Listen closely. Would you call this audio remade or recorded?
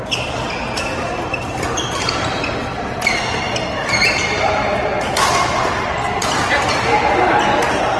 recorded